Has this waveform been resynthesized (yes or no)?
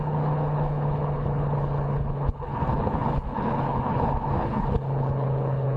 yes